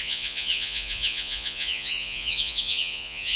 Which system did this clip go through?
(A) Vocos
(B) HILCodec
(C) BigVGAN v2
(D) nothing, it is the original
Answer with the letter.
A